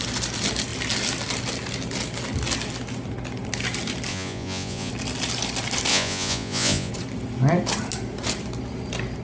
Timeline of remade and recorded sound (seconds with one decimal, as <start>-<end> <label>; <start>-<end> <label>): 0.0-4.1 recorded; 4.1-4.9 remade; 4.9-5.9 recorded; 5.9-6.9 remade; 6.9-9.2 recorded